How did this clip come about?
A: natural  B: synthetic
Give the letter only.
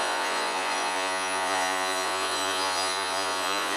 B